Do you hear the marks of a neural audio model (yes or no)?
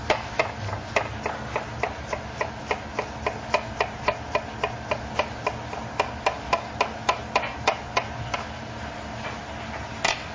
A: no